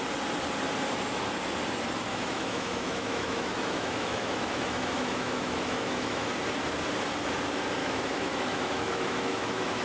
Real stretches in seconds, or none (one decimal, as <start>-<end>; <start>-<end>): 0.0-2.1; 6.3-7.8